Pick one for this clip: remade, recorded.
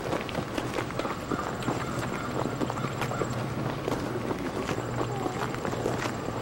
recorded